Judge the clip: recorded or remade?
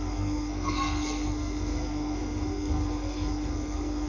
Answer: remade